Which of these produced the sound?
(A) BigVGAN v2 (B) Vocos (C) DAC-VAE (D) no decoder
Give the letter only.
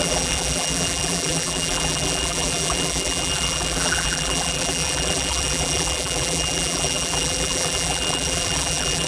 A